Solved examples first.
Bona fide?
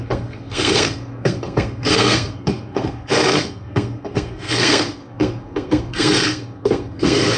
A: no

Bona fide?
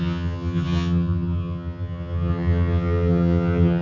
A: no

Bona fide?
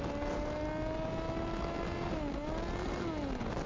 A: yes